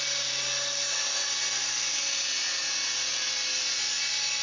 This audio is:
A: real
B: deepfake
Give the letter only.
A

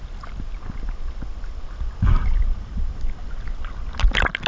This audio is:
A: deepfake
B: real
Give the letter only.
B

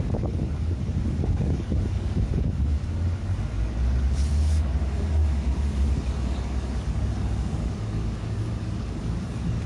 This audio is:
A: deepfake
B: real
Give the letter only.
A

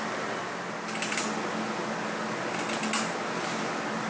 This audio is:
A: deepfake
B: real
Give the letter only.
B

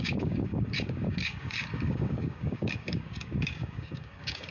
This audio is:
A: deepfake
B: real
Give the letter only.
A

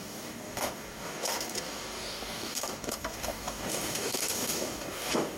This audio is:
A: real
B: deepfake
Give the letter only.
B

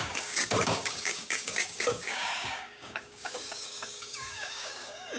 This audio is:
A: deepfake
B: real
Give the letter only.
A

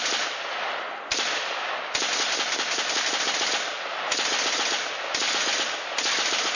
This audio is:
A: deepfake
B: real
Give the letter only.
B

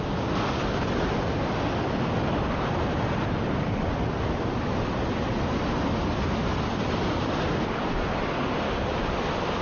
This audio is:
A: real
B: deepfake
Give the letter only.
A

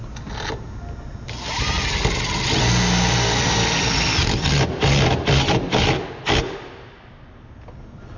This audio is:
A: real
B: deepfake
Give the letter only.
A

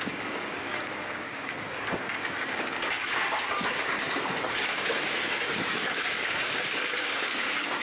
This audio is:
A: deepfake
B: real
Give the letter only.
A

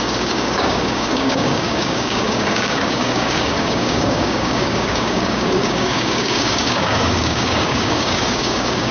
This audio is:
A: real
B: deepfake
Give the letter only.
B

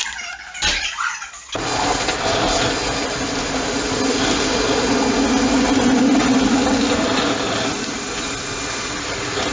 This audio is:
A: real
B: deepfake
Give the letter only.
A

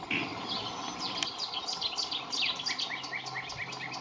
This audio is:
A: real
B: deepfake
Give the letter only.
A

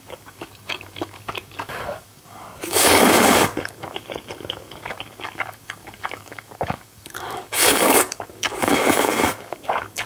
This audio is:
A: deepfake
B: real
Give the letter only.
A